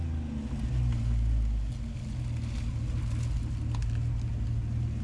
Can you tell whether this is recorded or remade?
recorded